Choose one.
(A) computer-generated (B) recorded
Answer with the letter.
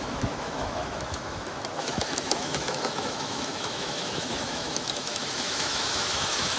A